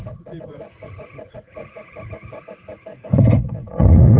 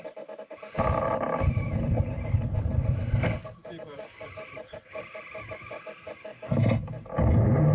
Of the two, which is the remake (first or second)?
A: first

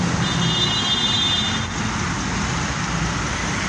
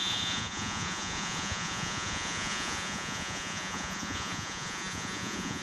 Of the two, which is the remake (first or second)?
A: second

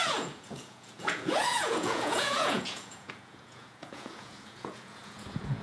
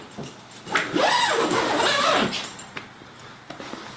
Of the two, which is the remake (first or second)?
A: first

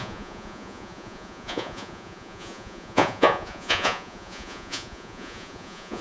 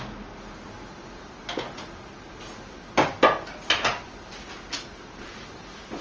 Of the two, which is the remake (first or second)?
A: first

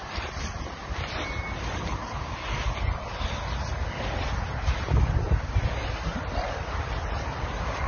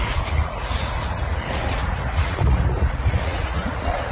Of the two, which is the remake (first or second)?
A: second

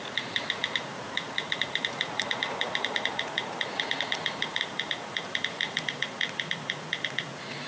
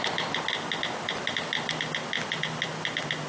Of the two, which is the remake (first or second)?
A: first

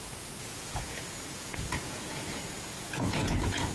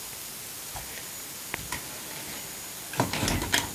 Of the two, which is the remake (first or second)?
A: first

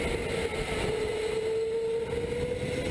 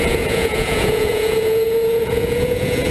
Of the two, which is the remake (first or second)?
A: second